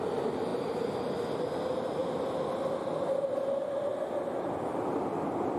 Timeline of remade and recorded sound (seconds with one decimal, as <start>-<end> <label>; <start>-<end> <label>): 0.0-0.5 recorded; 0.5-1.6 remade; 1.6-5.6 recorded